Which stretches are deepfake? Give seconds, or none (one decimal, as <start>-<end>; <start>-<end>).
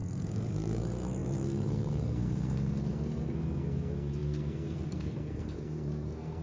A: 0.0-6.4